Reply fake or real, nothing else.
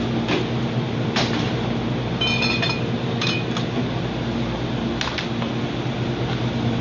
real